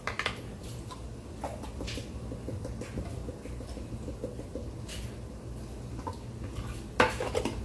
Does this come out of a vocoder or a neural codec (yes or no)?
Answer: no